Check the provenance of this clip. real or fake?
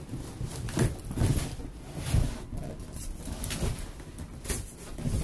real